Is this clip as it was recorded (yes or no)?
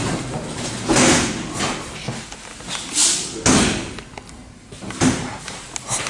yes